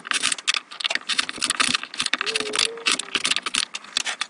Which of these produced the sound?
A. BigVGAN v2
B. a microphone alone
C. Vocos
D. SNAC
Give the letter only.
B